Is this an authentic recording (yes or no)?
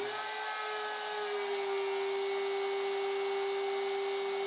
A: yes